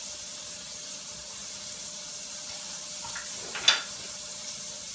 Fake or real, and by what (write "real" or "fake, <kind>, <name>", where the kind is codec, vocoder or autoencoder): real